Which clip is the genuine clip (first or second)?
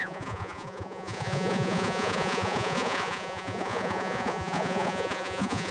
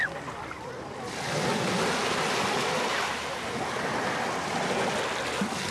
second